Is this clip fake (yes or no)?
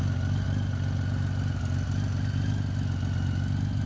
no